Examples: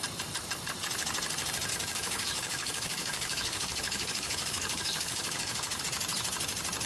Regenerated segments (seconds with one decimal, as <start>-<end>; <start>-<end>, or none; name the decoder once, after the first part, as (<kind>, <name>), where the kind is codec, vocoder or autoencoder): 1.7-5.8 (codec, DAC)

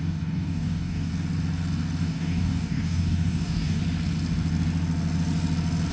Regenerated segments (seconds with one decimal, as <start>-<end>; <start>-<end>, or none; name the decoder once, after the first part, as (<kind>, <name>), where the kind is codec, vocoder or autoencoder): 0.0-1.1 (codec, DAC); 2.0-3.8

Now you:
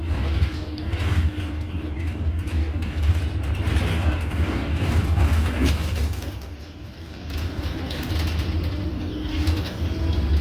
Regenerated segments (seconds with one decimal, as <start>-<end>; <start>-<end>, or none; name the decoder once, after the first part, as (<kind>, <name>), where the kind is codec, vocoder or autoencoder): 0.0-3.2 (codec, DAC); 3.9-8.1; 8.9-9.9

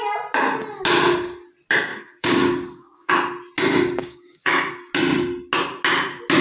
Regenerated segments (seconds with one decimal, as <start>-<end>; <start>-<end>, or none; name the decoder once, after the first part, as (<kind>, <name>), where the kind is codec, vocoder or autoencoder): 1.9-3.1 (codec, DAC); 4.0-4.7